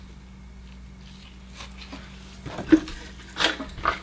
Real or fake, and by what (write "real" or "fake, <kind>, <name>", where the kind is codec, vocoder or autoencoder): real